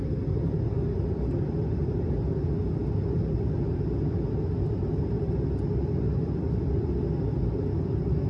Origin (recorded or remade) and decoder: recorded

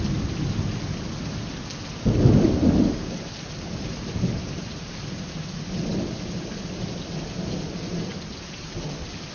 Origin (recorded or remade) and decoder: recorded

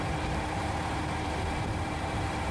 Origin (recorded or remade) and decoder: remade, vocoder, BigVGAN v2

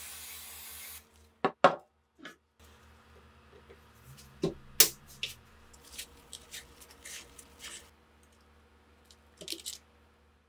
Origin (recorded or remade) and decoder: recorded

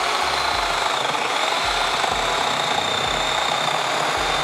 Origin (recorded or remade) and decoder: recorded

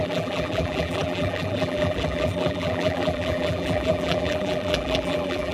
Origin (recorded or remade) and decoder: remade, vocoder, BigVGAN v2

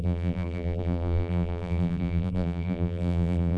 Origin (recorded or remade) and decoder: remade, vocoder, BigVGAN v2